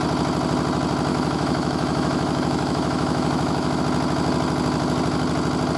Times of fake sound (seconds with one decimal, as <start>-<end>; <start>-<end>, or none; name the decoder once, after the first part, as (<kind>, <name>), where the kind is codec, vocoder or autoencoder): 1.1-3.8 (autoencoder, DAC-VAE)